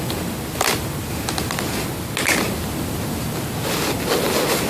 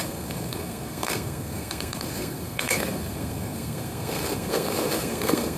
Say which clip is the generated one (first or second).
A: second